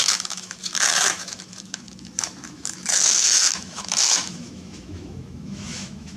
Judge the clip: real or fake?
fake